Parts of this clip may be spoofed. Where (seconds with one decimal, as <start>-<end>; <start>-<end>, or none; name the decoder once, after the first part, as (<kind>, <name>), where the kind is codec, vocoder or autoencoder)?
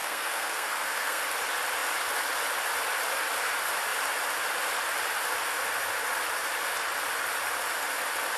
0.0-1.2 (codec, SNAC)